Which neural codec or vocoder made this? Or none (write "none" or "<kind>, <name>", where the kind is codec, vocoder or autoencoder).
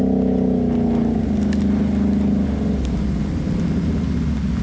none